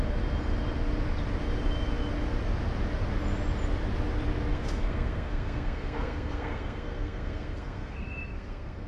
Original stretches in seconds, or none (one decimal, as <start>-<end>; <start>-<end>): 0.0-4.5